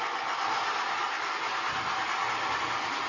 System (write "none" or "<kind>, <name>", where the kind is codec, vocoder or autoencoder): none